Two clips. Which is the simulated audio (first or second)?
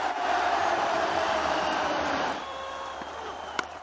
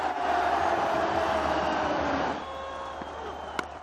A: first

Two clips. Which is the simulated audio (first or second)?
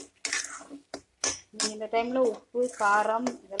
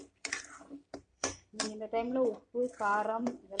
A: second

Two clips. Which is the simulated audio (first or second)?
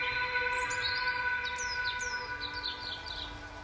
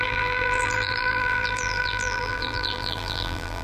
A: second